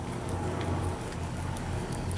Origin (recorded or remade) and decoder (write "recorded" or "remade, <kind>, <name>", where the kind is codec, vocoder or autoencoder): remade, codec, DAC